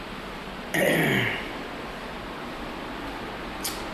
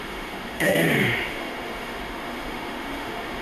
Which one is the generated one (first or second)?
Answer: second